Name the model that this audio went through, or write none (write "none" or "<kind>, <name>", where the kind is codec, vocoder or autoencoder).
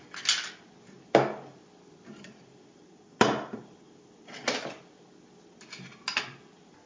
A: none